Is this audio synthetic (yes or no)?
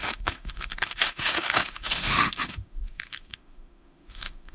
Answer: yes